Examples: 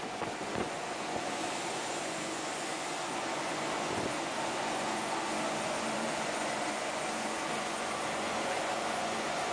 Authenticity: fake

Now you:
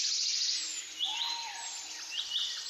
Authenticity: real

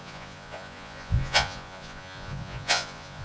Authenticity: fake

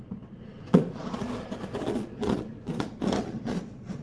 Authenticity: fake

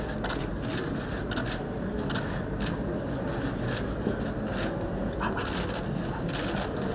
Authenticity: real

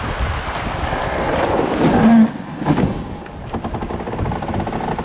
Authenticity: real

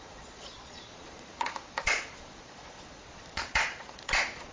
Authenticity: fake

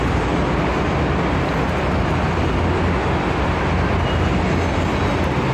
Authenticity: real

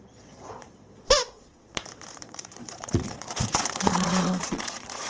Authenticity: fake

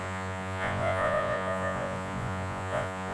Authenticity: fake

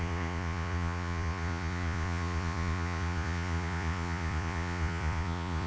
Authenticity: fake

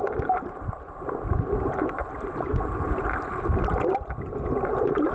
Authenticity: real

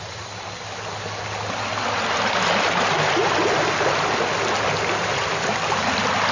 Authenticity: real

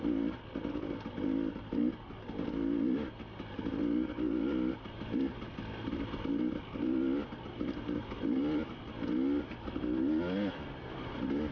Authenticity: real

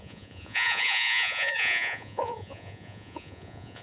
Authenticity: fake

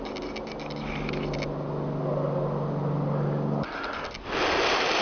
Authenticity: real